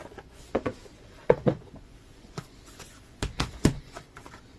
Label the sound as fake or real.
fake